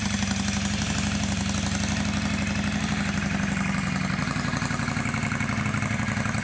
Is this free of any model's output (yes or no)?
yes